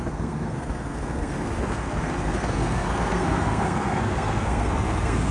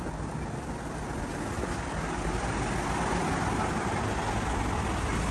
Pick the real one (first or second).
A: second